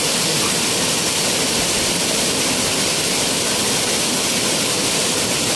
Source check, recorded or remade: recorded